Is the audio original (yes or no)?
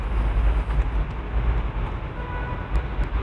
yes